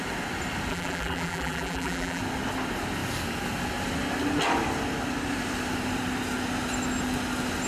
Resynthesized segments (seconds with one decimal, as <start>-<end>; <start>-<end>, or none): 0.7-2.2